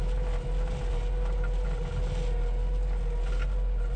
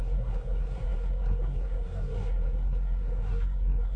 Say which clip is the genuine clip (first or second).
first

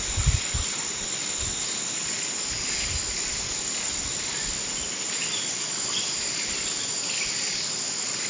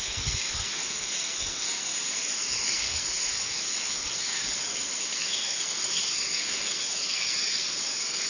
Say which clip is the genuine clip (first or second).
first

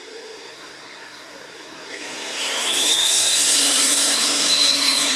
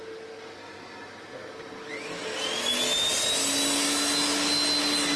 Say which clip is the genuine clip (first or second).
second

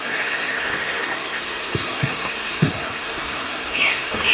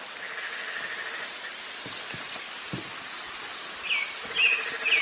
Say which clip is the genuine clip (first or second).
second